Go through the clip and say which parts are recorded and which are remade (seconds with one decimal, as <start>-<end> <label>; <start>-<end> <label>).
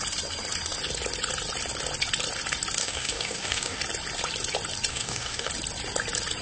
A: 0.0-2.8 recorded; 2.8-3.8 remade; 3.8-4.9 recorded; 4.9-5.5 remade; 5.5-6.4 recorded